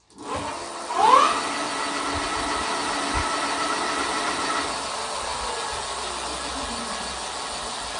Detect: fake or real real